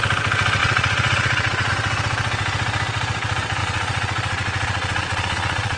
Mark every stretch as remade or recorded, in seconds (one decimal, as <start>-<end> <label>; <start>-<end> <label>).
0.0-0.6 recorded; 0.6-1.7 remade; 1.7-3.6 recorded; 3.6-5.8 remade